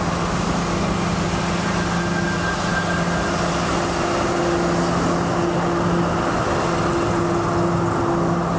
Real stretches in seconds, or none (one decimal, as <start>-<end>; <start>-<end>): 0.0-8.6